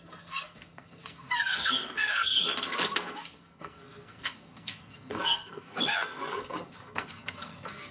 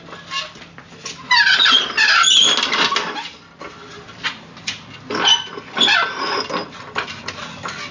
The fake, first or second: first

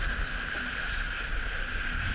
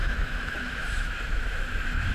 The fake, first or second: second